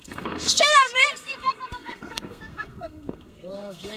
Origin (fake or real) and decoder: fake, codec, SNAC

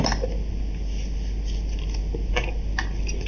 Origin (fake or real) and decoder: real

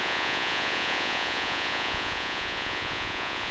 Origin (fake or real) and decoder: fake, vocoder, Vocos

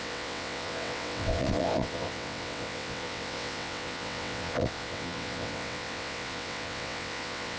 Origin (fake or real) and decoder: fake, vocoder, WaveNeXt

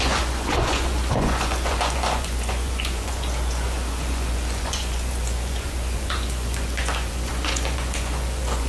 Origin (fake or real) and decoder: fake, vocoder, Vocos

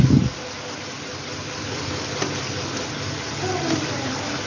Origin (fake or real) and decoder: real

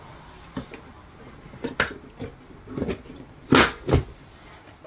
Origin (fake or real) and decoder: real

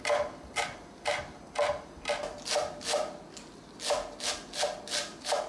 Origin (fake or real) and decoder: real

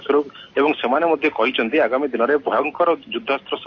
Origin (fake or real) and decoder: real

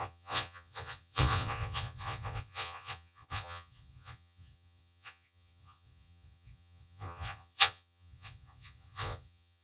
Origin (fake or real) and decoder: fake, vocoder, Vocos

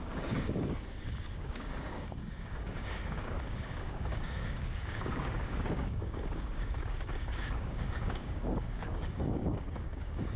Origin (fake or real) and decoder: fake, codec, DAC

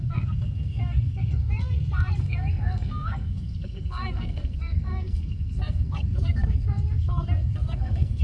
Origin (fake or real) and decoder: fake, codec, SNAC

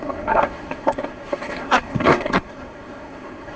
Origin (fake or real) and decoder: fake, codec, SNAC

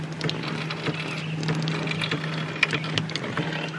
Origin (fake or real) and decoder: real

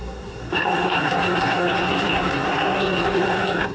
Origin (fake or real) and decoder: fake, codec, SNAC